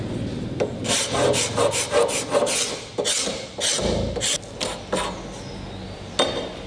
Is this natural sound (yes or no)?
yes